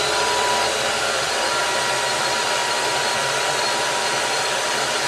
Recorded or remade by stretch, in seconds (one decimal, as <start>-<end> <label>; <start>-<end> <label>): 0.0-5.1 remade